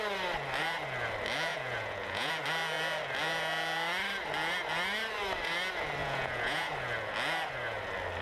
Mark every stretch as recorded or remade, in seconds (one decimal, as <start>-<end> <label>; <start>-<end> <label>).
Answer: 0.0-1.5 recorded; 1.5-2.3 remade; 2.3-6.0 recorded; 6.0-6.7 remade; 6.7-8.2 recorded